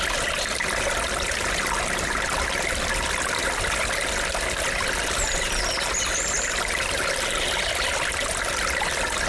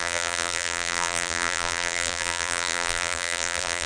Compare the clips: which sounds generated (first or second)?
second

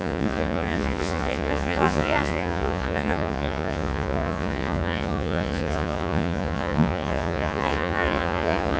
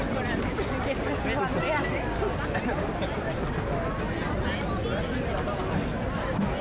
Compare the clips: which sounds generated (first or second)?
first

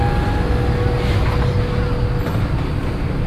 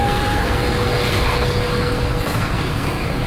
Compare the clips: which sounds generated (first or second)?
second